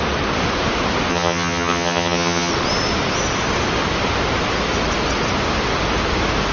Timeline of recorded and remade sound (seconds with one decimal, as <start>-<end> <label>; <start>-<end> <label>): 0.0-1.1 recorded; 1.1-2.5 remade; 2.5-6.5 recorded